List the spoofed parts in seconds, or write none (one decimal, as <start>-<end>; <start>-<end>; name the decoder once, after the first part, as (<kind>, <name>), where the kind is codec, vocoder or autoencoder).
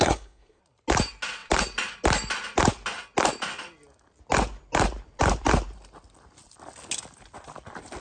0.0-0.6 (codec, SNAC)